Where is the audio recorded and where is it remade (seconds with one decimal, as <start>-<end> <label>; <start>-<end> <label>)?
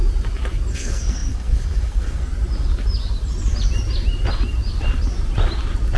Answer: 0.0-0.7 recorded; 0.7-2.3 remade; 2.3-6.0 recorded